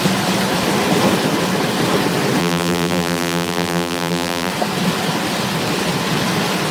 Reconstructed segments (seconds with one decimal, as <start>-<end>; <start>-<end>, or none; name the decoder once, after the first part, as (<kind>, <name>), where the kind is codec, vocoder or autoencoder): 2.4-4.5 (vocoder, BigVGAN v2)